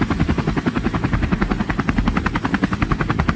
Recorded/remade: recorded